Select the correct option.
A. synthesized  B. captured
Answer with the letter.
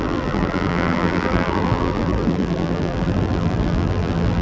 A